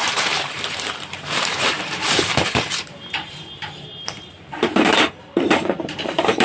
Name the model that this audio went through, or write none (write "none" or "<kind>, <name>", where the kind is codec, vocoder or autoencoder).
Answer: vocoder, BigVGAN v2